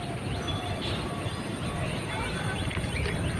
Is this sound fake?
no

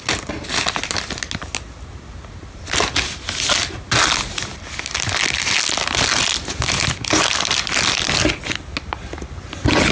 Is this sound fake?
no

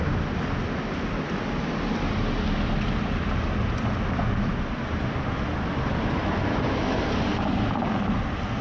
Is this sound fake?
no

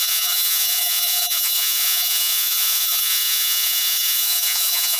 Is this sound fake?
yes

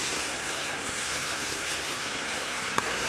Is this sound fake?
yes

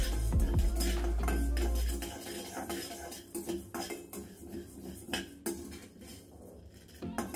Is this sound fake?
no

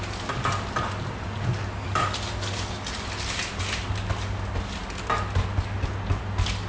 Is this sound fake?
no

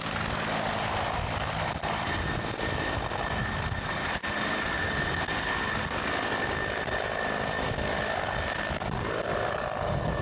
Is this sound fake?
no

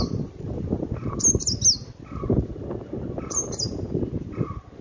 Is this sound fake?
no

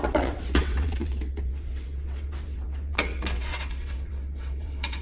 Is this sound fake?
yes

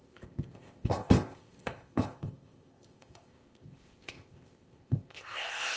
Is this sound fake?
yes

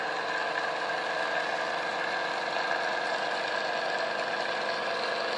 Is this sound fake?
no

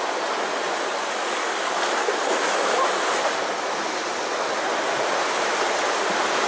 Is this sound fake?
no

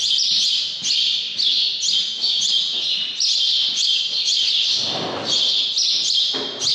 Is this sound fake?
no